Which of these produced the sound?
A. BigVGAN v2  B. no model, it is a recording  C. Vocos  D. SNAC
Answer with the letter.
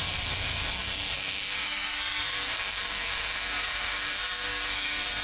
D